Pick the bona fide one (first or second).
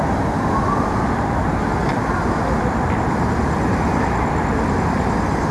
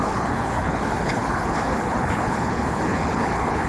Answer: first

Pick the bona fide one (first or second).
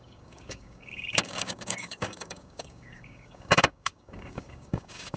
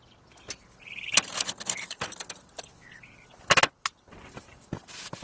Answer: second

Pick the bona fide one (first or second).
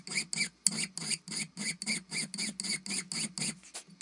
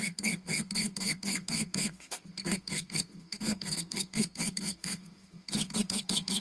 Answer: first